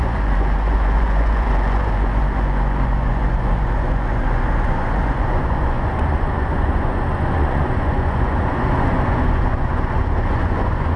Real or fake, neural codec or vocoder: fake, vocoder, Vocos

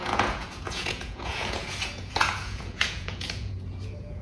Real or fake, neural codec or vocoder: fake, vocoder, Vocos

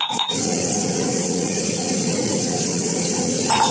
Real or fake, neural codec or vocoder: fake, vocoder, Vocos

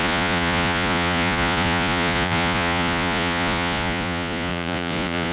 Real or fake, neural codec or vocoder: fake, vocoder, Vocos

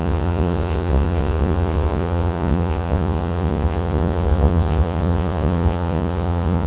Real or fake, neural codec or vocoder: fake, vocoder, Vocos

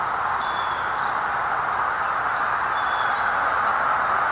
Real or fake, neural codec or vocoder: real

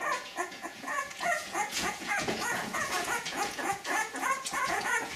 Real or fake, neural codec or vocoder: fake, vocoder, Vocos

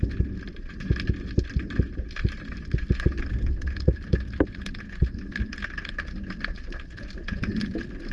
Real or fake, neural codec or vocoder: real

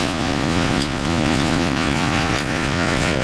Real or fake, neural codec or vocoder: fake, vocoder, Vocos